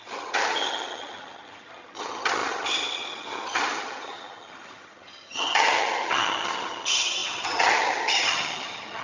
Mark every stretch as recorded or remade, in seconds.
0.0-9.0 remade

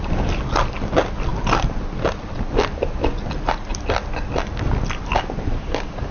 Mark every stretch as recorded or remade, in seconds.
0.0-6.1 recorded